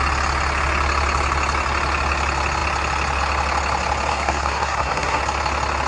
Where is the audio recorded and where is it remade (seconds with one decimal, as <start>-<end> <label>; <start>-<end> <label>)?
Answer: 0.0-4.1 recorded; 4.1-5.2 remade; 5.2-5.9 recorded